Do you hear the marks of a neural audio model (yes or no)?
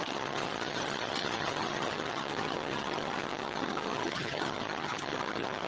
yes